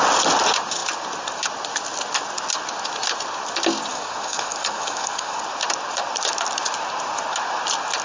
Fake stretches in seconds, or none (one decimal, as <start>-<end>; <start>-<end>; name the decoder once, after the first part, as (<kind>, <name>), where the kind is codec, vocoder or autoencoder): 3.9-5.4 (codec, DAC)